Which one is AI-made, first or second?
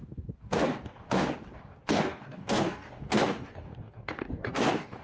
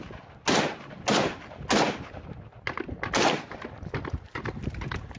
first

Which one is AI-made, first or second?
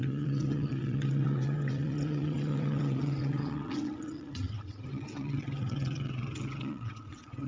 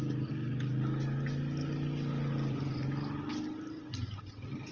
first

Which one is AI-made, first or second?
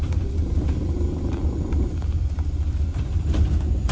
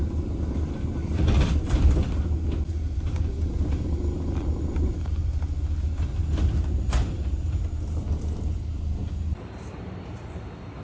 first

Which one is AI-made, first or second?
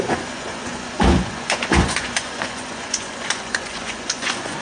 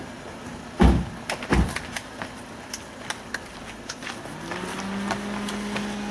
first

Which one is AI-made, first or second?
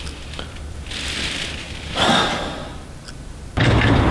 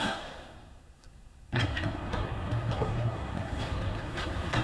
second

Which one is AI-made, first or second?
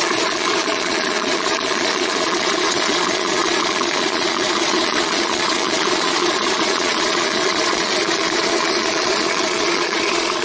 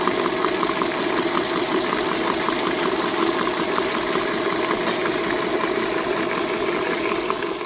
first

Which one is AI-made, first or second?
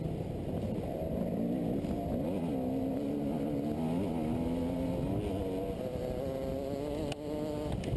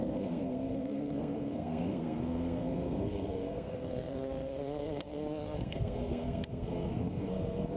second